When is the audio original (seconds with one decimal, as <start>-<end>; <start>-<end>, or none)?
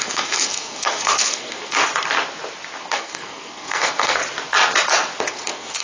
1.8-2.8; 4.2-5.3